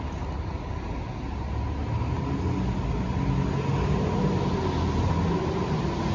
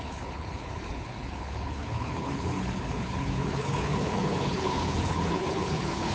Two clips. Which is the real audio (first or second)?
first